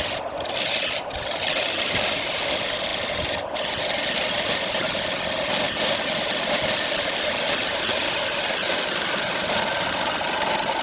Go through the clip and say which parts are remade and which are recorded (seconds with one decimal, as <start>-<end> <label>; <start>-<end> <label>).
0.0-10.8 recorded

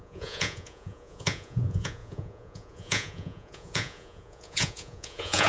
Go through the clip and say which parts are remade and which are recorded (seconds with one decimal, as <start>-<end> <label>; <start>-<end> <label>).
0.0-5.5 remade

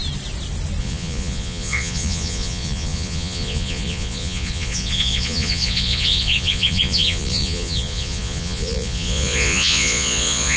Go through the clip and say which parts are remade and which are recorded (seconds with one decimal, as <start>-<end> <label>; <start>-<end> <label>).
0.0-0.8 recorded; 0.8-10.6 remade

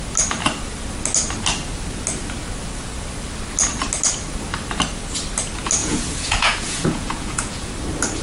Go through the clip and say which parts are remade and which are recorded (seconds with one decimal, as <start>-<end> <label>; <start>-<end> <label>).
0.0-5.8 recorded; 5.8-7.7 remade; 7.7-8.2 recorded